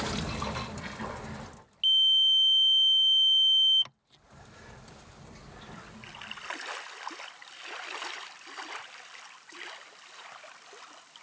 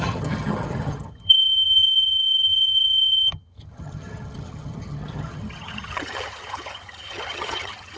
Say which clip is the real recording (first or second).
first